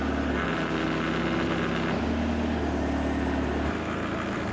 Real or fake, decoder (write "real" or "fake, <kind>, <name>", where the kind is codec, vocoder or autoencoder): real